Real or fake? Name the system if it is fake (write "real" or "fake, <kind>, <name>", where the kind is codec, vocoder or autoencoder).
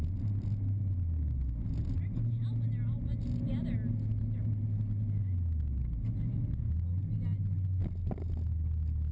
real